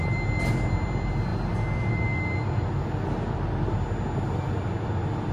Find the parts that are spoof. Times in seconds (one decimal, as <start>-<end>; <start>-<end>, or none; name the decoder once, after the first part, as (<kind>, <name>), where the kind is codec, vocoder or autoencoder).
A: none